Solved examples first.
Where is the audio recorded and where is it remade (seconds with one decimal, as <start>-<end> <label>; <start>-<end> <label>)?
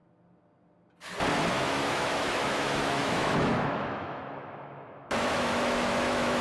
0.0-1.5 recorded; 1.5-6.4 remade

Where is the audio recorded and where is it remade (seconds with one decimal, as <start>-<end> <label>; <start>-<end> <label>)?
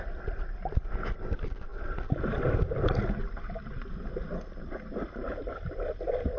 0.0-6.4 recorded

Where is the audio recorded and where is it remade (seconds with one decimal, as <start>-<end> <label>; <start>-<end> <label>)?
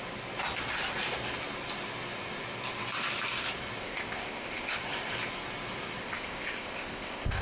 0.0-3.8 recorded; 3.8-4.8 remade; 4.8-6.0 recorded; 6.0-7.4 remade